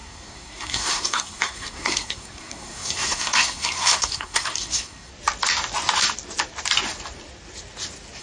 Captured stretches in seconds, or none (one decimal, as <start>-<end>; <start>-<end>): 5.1-8.2